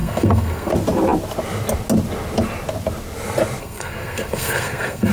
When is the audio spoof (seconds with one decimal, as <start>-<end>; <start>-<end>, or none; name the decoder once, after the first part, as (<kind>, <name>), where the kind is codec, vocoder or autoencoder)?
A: 0.0-0.7 (codec, SNAC); 3.6-5.1